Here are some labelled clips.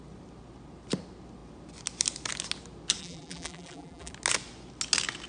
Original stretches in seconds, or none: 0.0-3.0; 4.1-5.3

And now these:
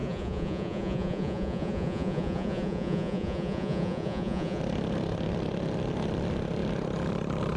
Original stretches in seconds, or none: 4.6-7.6

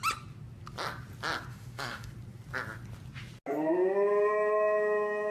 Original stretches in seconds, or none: 0.0-1.5; 2.1-5.3

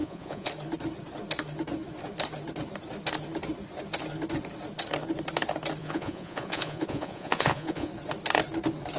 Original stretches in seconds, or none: 0.5-5.8; 7.9-9.0

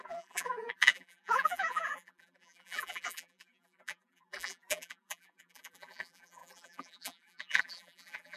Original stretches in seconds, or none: none

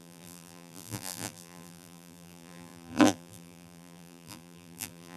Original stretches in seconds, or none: none

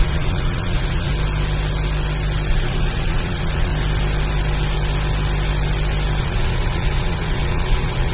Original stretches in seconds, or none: 1.1-2.5; 3.7-6.2

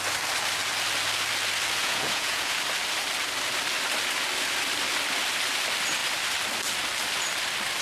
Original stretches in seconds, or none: 0.0-1.8; 2.6-7.8